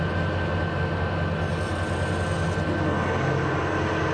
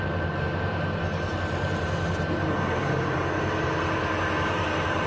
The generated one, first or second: second